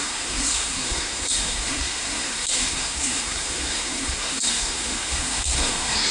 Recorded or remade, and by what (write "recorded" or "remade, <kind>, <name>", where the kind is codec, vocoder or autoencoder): remade, codec, SNAC